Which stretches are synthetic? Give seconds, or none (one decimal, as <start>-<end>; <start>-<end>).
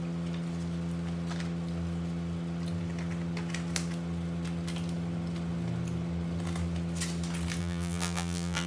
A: 7.6-8.7